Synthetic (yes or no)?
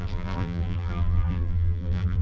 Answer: yes